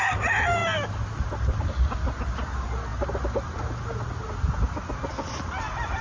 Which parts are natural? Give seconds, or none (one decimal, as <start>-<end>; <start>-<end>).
0.0-6.0